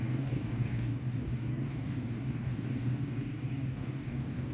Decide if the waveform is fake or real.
fake